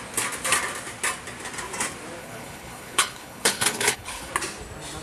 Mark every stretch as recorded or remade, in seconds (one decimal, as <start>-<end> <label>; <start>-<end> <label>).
0.0-2.2 recorded; 2.2-4.3 remade; 4.3-5.0 recorded